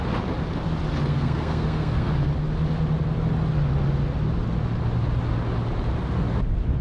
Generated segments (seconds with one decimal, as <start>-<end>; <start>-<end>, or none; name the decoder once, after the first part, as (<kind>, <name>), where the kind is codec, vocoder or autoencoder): 1.1-2.1 (codec, SNAC)